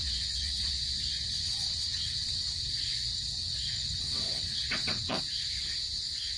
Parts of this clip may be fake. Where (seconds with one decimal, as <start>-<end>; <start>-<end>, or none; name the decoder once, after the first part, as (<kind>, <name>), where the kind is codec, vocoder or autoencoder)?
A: 0.0-0.7 (vocoder, WaveNeXt); 1.1-2.7; 3.1-5.2